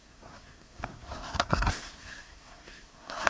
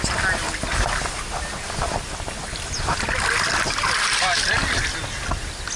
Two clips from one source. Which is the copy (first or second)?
first